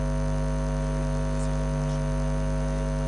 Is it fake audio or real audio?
real